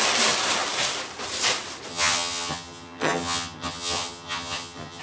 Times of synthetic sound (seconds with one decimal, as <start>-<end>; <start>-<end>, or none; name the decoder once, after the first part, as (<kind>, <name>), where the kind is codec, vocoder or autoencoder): 1.9-5.0 (vocoder, HiFi-GAN)